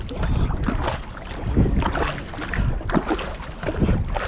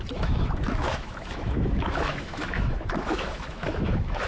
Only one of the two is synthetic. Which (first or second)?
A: second